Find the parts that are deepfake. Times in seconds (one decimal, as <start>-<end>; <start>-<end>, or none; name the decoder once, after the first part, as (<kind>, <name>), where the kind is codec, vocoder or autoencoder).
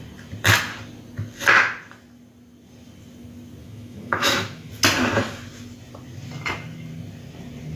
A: 3.6-4.7 (autoencoder, DAC-VAE)